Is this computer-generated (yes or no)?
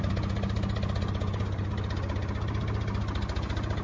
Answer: no